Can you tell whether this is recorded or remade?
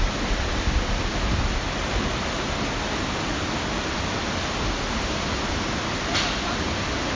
recorded